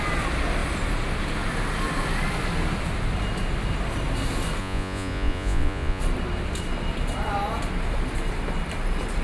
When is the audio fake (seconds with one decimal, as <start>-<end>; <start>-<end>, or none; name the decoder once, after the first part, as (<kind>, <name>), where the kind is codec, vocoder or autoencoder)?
4.6-6.0 (vocoder, Vocos)